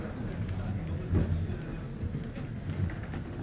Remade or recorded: recorded